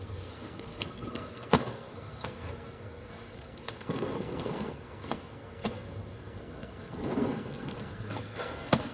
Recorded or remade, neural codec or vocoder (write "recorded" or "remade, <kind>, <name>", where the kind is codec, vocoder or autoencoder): remade, codec, SNAC